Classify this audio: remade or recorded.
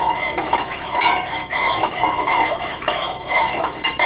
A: remade